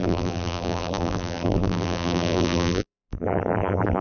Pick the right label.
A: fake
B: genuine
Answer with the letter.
A